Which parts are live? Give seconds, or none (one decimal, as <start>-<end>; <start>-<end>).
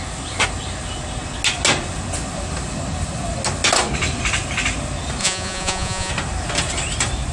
0.0-5.2; 6.1-7.3